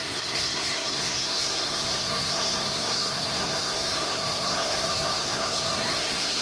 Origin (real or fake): fake